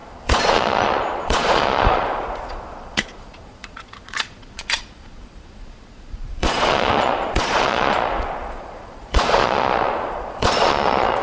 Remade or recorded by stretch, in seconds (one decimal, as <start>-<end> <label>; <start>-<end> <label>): 0.0-11.2 remade